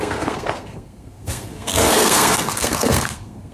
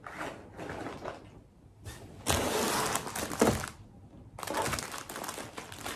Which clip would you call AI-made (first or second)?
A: first